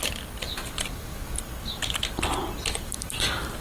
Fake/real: real